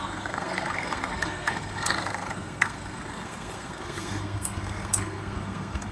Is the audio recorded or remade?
remade